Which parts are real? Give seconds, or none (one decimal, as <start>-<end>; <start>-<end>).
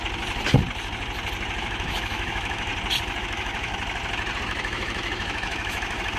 0.0-1.6; 2.7-3.2; 3.7-4.4